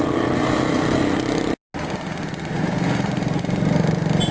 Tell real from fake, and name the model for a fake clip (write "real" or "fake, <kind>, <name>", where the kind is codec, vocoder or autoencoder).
real